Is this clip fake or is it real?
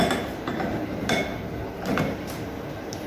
real